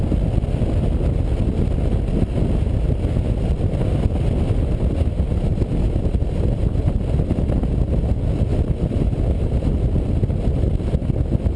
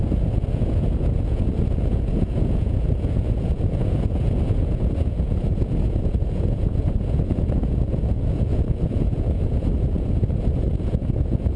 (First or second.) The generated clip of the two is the second